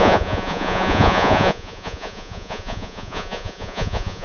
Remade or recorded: remade